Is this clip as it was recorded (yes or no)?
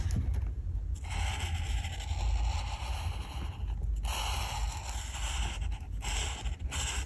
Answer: yes